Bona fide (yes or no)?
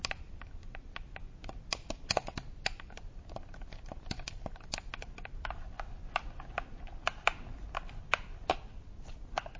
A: yes